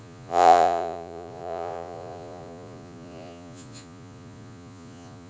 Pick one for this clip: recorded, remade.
remade